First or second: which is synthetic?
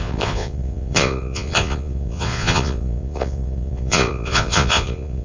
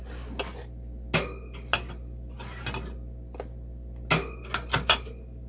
first